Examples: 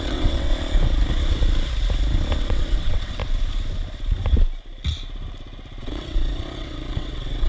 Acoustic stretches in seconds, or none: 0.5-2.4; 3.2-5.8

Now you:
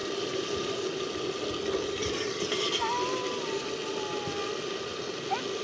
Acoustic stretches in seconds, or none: 0.6-2.0; 3.4-5.6